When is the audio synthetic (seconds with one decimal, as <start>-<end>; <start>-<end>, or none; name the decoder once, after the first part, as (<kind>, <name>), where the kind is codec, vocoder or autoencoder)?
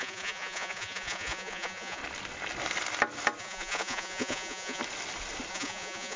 0.0-2.0 (vocoder, Vocos); 3.4-4.8; 5.5-6.2